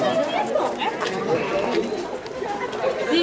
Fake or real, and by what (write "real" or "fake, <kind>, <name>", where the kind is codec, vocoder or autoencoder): real